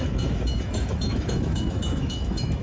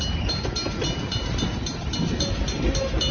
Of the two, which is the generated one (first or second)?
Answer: first